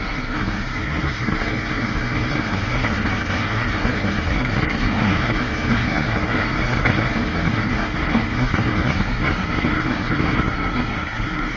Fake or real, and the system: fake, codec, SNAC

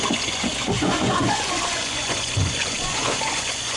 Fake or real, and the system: fake, vocoder, Vocos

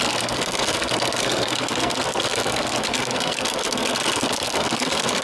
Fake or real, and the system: fake, codec, SNAC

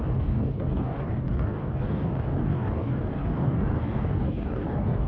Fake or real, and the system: fake, codec, DAC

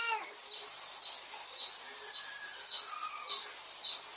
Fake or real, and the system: real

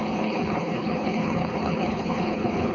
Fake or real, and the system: fake, codec, HILCodec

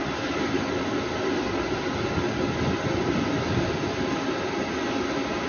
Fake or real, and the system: real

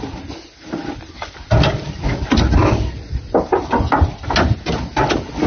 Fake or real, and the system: real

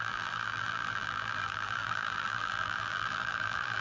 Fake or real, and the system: fake, vocoder, BigVGAN v2